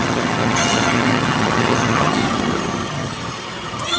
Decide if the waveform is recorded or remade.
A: remade